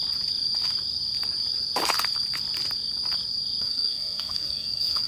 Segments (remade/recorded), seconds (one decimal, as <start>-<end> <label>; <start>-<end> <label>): 0.0-3.6 recorded; 3.6-5.1 remade